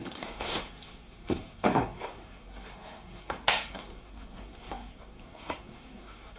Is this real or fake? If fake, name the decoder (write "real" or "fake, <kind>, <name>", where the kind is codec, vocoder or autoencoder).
fake, codec, SNAC